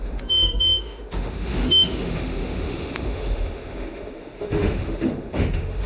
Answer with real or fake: fake